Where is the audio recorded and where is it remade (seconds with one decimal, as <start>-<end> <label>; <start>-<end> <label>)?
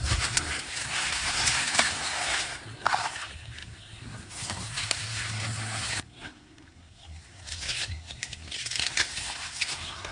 0.0-10.1 remade